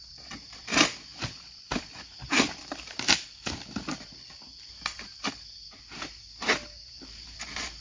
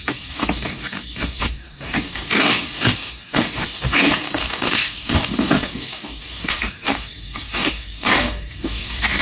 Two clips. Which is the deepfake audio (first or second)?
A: second